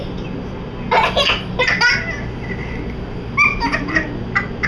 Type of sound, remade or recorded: recorded